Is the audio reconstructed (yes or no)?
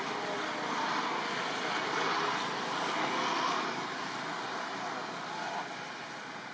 no